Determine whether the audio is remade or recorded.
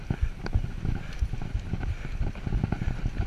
recorded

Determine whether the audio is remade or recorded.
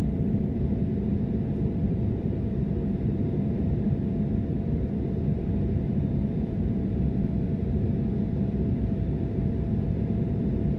remade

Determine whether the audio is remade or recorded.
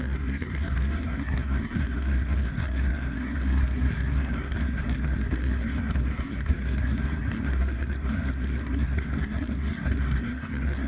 remade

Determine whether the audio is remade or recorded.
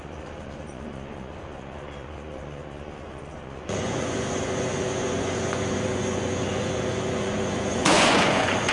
remade